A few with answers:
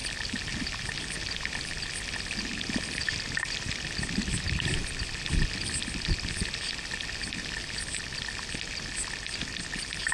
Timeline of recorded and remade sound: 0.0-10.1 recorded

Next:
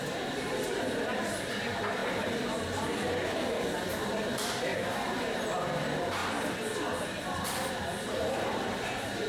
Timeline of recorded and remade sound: 0.0-4.7 remade; 4.7-5.2 recorded; 5.2-6.2 remade; 6.2-7.7 recorded; 7.7-9.3 remade

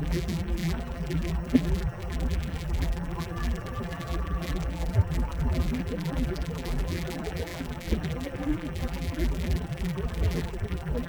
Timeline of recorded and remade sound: 0.0-11.1 remade

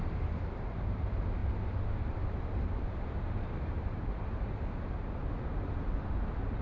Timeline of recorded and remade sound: 0.0-1.4 remade; 1.4-2.1 recorded; 2.1-5.2 remade; 5.2-6.6 recorded

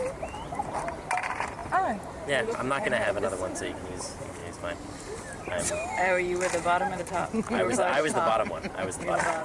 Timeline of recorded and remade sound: 0.0-4.4 remade; 4.4-7.0 recorded; 7.0-9.4 remade

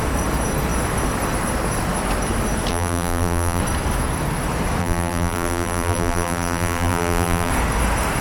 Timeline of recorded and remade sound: 0.0-2.7 recorded; 2.7-3.6 remade; 3.6-4.8 recorded; 4.8-7.5 remade; 7.5-8.2 recorded